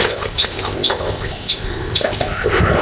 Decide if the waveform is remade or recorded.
remade